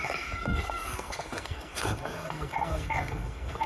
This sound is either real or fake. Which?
fake